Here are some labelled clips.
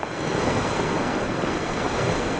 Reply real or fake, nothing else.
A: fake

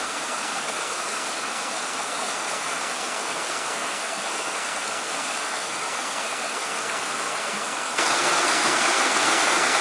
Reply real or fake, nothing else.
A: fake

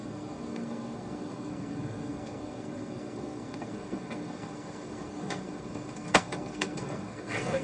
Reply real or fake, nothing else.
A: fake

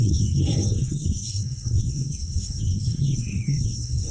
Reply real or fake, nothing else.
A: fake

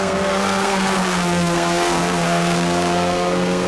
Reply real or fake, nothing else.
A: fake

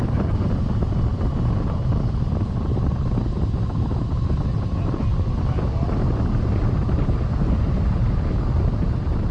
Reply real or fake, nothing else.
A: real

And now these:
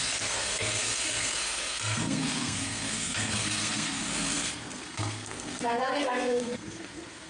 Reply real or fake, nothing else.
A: fake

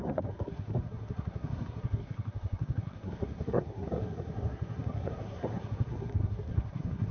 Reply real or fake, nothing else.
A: fake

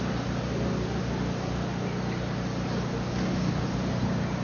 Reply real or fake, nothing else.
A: real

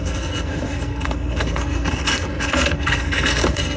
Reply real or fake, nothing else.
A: fake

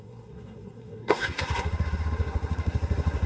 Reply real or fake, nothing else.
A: fake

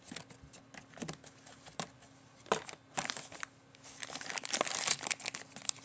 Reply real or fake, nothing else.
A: real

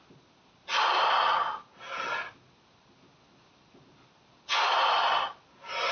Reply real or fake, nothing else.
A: real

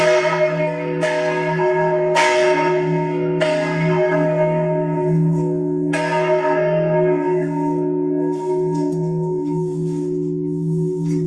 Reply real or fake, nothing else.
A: fake